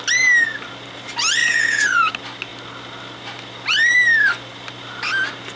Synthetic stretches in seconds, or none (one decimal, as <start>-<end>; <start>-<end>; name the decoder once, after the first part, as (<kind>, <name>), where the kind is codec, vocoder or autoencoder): 1.4-2.1 (vocoder, Vocos)